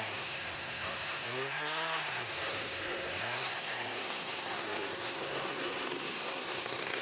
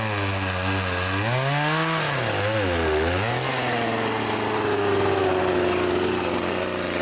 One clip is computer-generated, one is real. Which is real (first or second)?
second